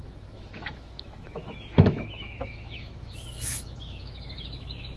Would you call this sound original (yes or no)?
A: no